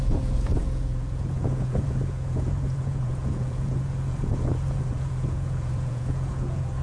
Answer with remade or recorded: remade